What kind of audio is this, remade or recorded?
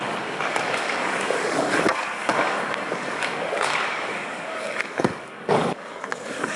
remade